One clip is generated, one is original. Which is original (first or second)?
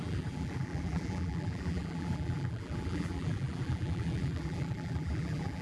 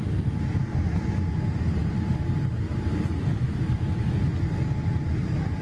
second